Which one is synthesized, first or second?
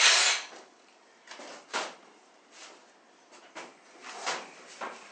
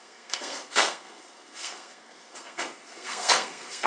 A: second